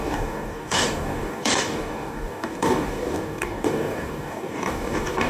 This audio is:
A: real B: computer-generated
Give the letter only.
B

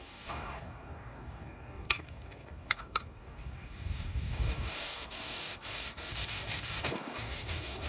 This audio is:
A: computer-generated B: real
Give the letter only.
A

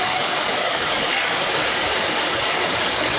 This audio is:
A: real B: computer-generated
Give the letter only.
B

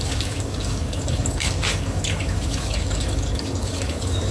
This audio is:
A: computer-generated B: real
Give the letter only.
A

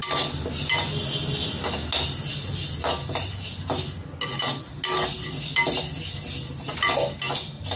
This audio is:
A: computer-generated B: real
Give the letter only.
B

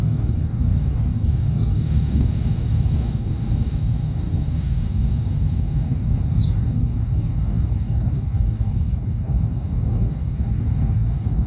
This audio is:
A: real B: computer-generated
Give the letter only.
B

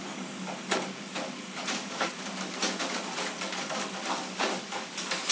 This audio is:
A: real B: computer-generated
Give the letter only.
B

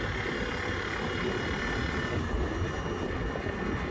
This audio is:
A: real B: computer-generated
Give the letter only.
A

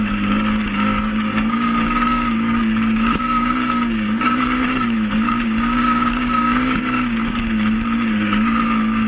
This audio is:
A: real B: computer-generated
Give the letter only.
B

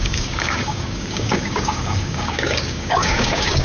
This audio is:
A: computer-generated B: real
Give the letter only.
A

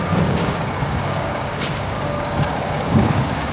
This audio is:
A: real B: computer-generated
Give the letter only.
B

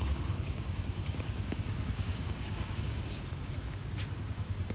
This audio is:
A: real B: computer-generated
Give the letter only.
B